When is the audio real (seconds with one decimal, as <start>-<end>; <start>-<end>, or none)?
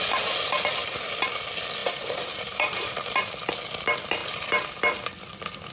0.0-1.8; 3.1-4.2; 4.8-5.7